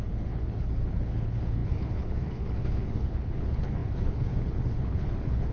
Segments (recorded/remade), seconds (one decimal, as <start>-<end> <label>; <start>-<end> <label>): 0.0-5.5 remade